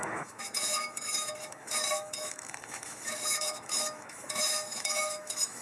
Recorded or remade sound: remade